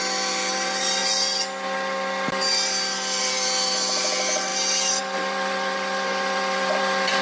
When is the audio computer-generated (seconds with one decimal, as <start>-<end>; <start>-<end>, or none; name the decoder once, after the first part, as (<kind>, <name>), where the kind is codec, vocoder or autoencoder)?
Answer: 0.0-1.0 (vocoder, BigVGAN v2); 3.2-4.5; 5.0-7.2